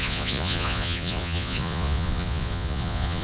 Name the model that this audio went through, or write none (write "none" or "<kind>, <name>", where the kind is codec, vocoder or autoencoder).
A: vocoder, Vocos